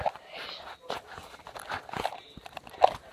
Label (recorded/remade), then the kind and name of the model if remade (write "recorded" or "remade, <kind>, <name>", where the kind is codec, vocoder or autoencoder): recorded